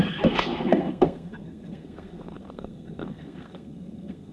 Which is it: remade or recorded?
remade